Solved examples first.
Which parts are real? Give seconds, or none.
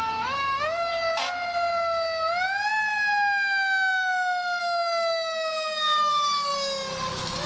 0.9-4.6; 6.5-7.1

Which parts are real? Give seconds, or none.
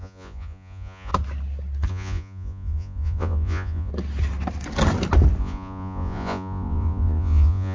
1.1-1.9; 3.9-5.4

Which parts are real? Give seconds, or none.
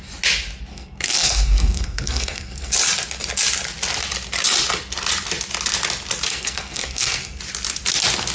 0.0-0.7; 2.7-6.3; 7.4-8.3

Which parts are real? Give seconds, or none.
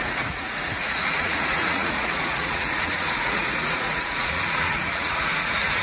none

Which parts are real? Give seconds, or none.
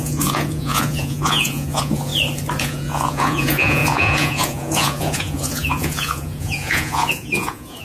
2.1-2.6